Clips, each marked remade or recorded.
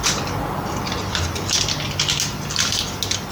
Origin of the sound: recorded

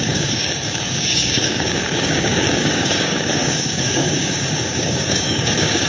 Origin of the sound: remade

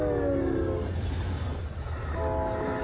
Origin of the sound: recorded